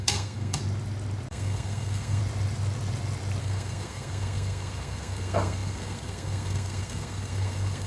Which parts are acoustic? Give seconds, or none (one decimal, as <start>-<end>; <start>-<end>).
0.6-1.3; 2.2-3.4